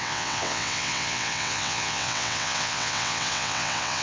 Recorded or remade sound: remade